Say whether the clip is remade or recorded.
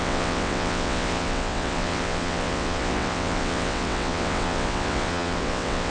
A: remade